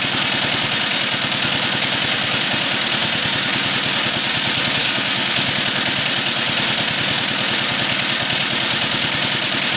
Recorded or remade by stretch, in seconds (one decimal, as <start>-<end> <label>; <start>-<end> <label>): 0.0-4.8 recorded; 4.8-5.5 remade; 5.5-9.8 recorded